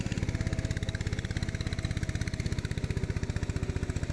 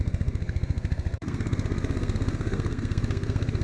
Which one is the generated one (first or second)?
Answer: second